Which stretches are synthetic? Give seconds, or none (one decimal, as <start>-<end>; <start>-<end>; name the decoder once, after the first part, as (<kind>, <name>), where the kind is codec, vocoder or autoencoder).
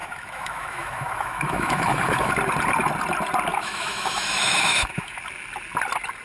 0.0-2.3 (autoencoder, DAC-VAE); 3.5-5.2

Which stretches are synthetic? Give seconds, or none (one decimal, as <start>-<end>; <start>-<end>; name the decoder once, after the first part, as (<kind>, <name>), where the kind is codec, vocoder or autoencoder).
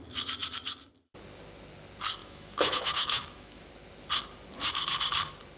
2.2-3.7 (autoencoder, DAC-VAE)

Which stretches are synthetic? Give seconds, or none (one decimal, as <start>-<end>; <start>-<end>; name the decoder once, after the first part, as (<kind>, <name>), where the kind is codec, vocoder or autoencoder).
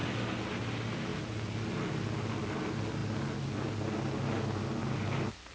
none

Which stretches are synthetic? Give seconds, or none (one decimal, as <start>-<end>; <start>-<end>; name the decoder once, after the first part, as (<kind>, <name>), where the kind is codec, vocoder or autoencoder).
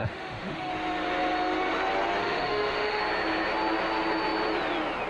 0.0-0.7 (autoencoder, DAC-VAE); 2.2-3.0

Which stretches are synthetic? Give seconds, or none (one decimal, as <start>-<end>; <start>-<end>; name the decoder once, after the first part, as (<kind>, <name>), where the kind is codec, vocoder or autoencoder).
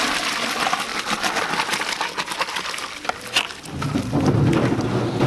none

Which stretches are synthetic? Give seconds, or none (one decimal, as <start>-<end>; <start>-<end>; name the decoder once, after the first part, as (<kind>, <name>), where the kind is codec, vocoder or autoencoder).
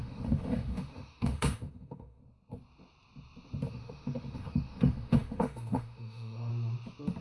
0.0-2.2 (autoencoder, DAC-VAE); 3.7-6.5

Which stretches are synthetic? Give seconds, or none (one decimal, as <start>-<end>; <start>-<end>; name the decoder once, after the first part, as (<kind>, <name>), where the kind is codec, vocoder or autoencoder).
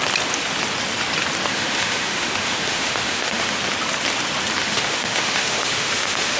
1.5-3.6 (autoencoder, DAC-VAE); 4.6-6.4